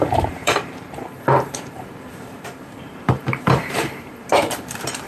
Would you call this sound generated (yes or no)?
yes